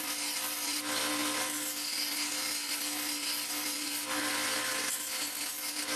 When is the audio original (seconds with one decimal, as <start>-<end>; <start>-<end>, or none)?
0.0-6.0